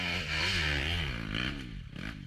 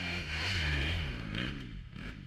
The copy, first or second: second